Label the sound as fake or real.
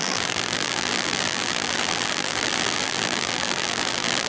fake